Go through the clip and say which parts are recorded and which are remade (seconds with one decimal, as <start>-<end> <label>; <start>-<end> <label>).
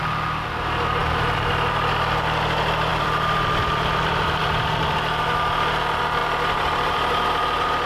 0.0-2.9 recorded; 2.9-4.4 remade; 4.4-6.2 recorded; 6.2-7.9 remade